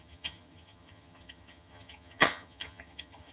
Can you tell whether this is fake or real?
fake